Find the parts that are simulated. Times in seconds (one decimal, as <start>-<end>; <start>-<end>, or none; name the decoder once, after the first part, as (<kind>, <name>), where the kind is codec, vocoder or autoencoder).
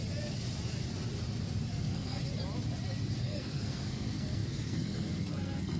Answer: 1.7-2.2 (codec, SNAC); 3.2-5.8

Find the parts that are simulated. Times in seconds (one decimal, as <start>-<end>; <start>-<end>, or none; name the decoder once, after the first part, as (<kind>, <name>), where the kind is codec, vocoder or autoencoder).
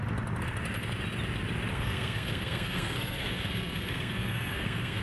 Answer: 1.7-5.0 (codec, SNAC)